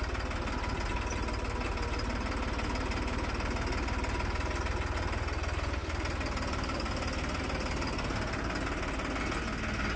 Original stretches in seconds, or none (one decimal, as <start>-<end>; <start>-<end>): 0.0-10.0